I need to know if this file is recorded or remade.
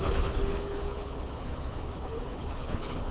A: remade